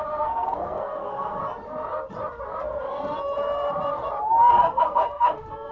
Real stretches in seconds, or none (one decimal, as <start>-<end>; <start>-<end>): 1.4-4.8